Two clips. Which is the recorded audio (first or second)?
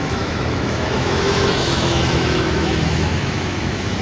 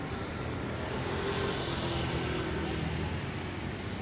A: second